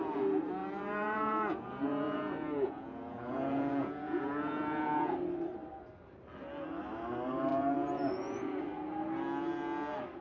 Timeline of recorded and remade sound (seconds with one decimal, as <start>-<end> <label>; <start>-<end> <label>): 0.0-0.6 recorded; 0.6-5.1 remade; 5.1-7.5 recorded; 7.5-8.6 remade; 8.6-10.2 recorded

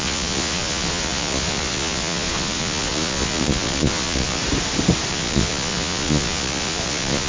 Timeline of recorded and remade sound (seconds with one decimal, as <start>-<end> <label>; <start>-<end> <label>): 0.0-4.4 remade; 4.4-5.1 recorded; 5.1-7.3 remade

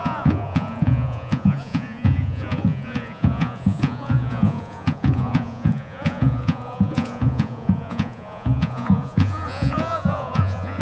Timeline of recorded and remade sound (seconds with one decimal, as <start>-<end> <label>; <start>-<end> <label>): 0.0-10.8 remade

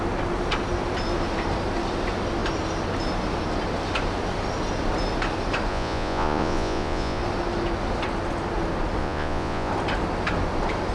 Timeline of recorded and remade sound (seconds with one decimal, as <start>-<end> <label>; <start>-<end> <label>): 0.0-5.7 recorded; 5.7-7.2 remade; 7.2-9.0 recorded; 9.0-9.7 remade; 9.7-10.9 recorded

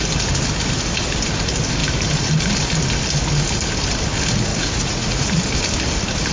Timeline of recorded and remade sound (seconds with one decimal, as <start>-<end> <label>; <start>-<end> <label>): 0.0-4.5 recorded; 4.5-5.4 remade; 5.4-6.3 recorded

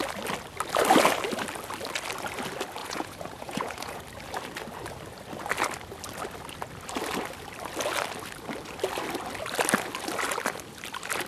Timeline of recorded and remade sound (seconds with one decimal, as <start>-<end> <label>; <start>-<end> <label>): 0.0-2.8 recorded; 2.8-4.0 remade; 4.0-11.3 recorded

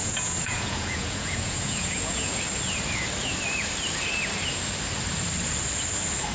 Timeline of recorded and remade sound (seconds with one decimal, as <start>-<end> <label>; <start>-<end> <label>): 0.0-2.4 remade; 2.4-6.3 recorded